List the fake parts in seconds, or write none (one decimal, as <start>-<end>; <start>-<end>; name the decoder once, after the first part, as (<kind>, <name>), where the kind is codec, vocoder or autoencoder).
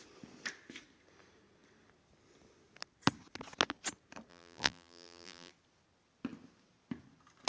4.3-5.5 (vocoder, BigVGAN v2)